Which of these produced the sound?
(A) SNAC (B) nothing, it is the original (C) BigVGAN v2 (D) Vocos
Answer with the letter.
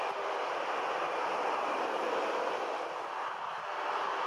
B